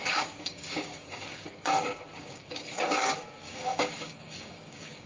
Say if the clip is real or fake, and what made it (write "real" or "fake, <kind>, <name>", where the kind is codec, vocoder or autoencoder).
fake, codec, DAC